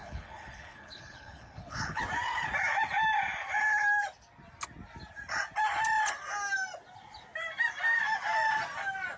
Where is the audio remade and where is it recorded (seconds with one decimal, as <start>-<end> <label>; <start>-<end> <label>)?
0.0-2.0 remade; 2.0-9.2 recorded